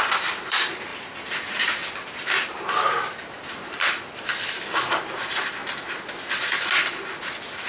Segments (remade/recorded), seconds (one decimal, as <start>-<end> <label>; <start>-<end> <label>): 0.0-4.3 remade; 4.3-4.9 recorded; 4.9-5.6 remade; 5.6-6.4 recorded; 6.4-7.7 remade

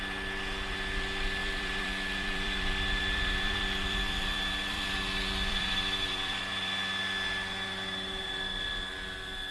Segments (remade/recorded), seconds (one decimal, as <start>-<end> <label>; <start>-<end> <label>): 0.0-1.4 recorded; 1.4-6.4 remade; 6.4-9.5 recorded